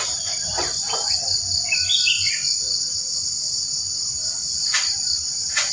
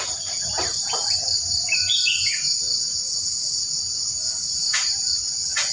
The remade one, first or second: second